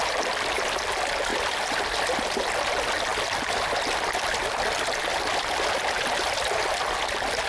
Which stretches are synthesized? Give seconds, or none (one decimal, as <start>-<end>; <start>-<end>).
1.3-1.8